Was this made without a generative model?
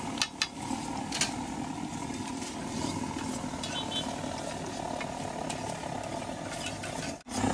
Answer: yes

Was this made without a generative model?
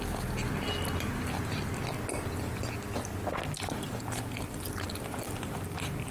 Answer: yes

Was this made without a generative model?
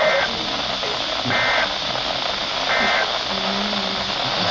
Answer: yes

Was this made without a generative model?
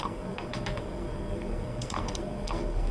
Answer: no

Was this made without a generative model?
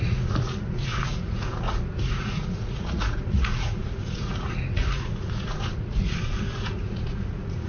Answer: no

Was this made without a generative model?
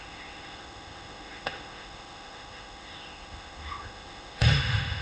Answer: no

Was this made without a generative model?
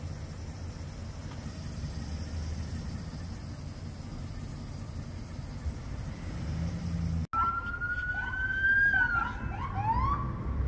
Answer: yes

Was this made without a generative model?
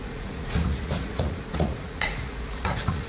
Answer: no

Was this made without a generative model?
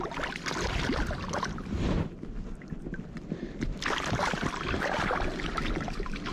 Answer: no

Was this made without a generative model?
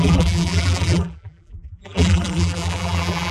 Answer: no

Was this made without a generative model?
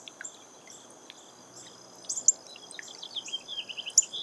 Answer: yes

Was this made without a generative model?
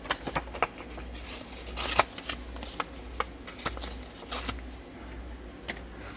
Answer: yes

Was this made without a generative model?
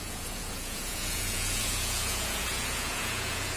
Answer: no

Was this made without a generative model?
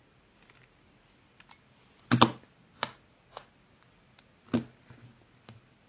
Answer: yes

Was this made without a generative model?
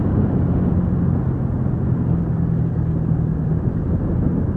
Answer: yes